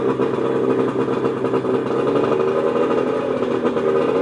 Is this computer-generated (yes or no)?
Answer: no